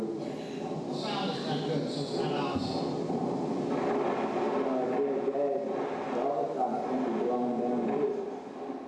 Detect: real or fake real